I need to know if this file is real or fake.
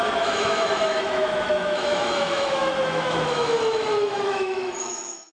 fake